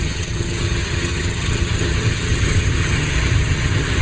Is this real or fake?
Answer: fake